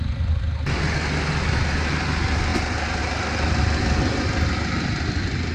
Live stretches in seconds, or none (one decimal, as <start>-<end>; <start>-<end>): 0.0-5.5